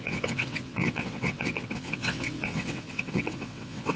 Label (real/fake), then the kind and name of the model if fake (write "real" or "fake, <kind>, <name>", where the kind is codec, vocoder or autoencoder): fake, vocoder, WaveNeXt